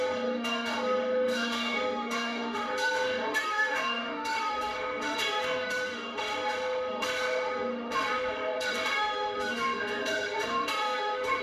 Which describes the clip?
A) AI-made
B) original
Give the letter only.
A